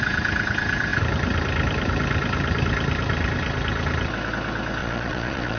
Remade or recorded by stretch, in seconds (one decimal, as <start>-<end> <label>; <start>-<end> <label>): 0.0-4.8 recorded; 4.8-5.6 remade